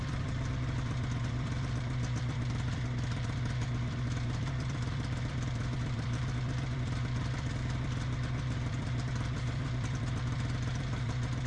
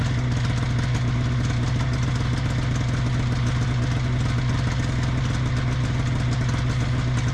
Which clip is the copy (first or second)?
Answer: first